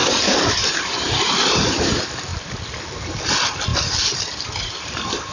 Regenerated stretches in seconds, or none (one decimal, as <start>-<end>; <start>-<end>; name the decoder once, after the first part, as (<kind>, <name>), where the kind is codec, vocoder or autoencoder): 0.0-1.9 (vocoder, BigVGAN v2); 3.7-5.3